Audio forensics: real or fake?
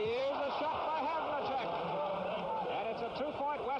fake